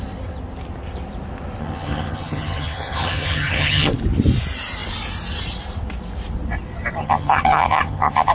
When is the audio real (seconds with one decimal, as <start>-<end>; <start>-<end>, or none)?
0.0-1.6; 3.9-7.0